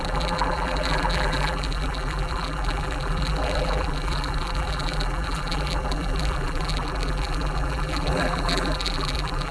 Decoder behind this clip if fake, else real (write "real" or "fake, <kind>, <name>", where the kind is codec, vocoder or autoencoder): fake, vocoder, BigVGAN v2